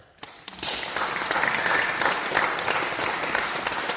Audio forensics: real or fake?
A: real